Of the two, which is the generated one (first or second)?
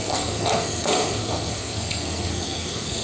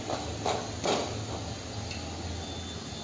first